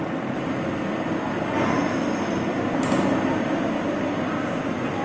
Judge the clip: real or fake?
real